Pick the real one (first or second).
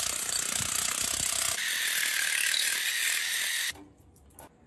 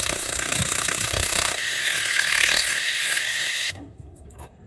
first